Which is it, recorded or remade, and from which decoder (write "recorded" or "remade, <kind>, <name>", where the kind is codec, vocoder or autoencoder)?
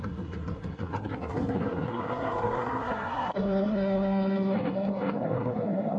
remade, codec, SNAC